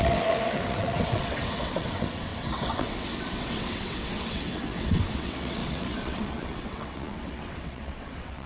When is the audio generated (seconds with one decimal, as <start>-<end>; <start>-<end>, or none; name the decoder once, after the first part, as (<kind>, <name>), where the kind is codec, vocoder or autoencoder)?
0.0-8.5 (vocoder, WaveNeXt)